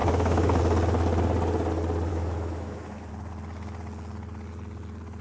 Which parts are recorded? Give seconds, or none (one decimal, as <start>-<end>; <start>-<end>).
0.6-2.1; 3.1-5.2